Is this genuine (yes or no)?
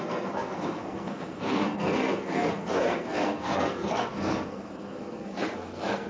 no